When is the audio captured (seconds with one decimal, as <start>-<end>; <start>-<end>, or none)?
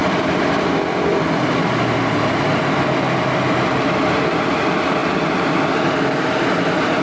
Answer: 0.0-7.0